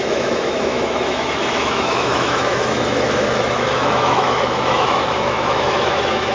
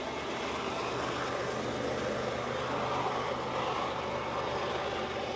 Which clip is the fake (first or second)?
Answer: first